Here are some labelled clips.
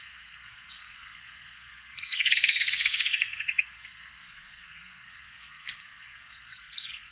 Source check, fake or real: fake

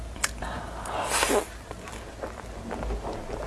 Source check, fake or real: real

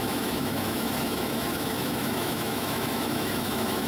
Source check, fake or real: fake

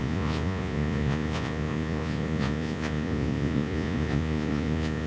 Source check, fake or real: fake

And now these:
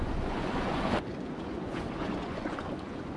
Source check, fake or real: fake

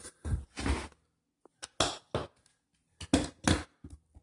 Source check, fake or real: real